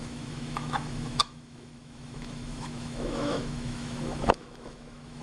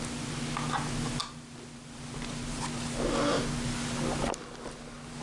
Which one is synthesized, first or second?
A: first